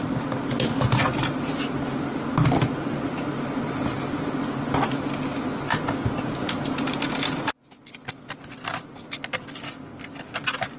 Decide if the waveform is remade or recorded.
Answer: recorded